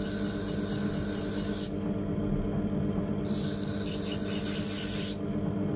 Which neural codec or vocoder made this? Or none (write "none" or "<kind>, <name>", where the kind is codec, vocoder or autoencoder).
none